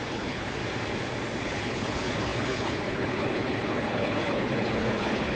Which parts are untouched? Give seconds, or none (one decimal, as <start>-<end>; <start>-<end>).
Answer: 0.6-1.4